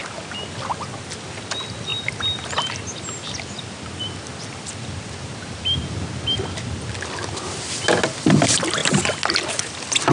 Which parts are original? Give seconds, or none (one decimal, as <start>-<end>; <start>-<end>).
0.0-10.1